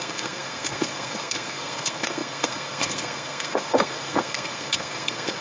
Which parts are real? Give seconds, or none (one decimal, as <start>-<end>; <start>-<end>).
none